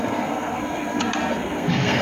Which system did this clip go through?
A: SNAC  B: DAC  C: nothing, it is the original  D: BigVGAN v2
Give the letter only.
A